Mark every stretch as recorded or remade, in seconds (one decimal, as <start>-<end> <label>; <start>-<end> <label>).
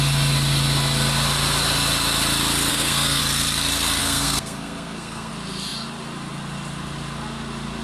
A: 0.0-2.7 recorded; 2.7-3.2 remade; 3.2-4.0 recorded; 4.0-5.3 remade; 5.3-7.8 recorded